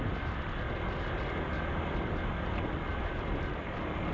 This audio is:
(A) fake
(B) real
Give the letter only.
B